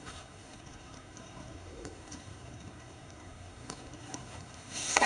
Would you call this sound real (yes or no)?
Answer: no